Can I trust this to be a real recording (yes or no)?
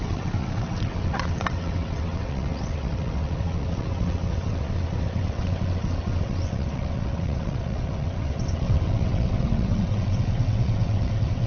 no